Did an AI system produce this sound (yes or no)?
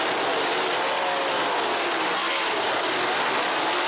no